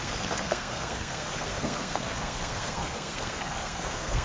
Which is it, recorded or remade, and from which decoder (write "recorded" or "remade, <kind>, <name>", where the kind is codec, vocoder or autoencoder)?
remade, codec, SNAC